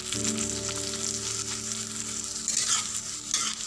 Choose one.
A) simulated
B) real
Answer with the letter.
B